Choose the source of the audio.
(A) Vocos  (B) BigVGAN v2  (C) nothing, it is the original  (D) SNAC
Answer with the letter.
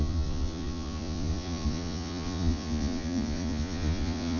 A